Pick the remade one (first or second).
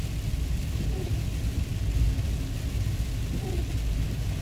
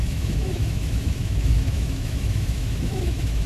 second